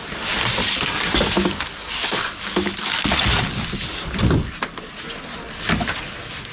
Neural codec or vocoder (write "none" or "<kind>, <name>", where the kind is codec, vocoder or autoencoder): none